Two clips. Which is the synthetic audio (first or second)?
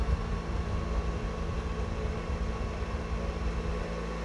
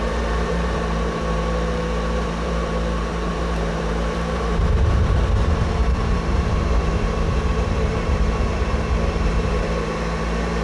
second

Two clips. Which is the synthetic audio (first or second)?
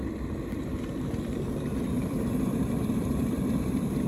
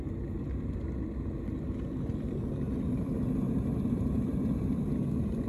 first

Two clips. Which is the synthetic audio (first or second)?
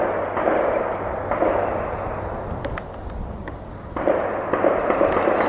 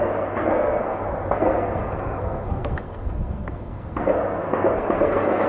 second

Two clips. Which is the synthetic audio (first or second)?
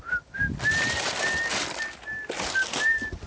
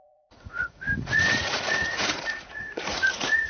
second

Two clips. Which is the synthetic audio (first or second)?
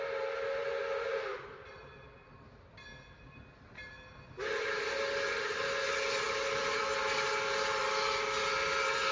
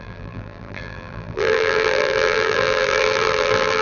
second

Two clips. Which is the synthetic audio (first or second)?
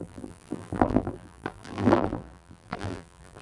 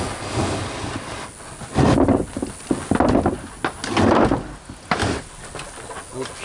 first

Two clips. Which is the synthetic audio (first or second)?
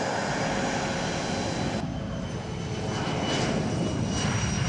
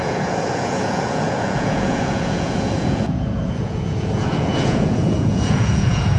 second